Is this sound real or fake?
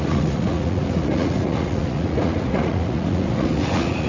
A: fake